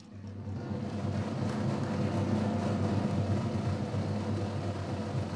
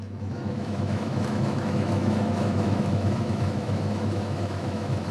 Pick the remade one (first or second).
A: second